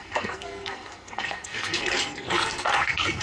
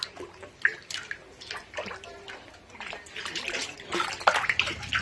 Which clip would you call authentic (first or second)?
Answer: second